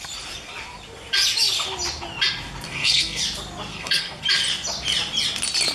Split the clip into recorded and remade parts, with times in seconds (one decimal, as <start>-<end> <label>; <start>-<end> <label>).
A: 0.0-2.7 recorded; 2.7-3.2 remade; 3.2-3.7 recorded; 3.7-4.2 remade; 4.2-5.7 recorded